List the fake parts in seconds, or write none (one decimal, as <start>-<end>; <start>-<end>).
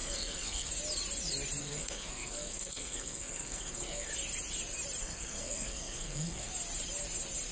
0.0-0.7; 1.6-4.1; 5.0-6.5